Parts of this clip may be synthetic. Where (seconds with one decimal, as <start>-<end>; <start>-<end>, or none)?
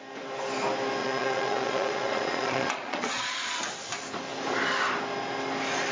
1.0-3.6